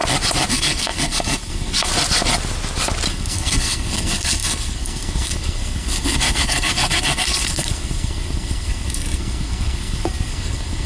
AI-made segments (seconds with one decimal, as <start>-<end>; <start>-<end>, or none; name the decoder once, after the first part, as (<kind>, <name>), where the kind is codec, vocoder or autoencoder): 0.5-1.9 (codec, SNAC); 3.1-10.9